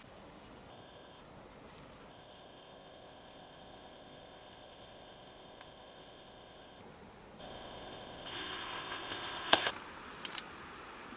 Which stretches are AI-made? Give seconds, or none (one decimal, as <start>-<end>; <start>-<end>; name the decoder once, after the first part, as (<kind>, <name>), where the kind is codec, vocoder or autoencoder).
0.7-1.2 (codec, ZipCodec); 2.1-6.8; 7.4-9.7